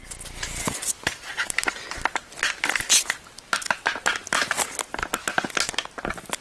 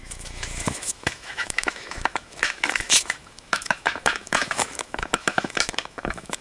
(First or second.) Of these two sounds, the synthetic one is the second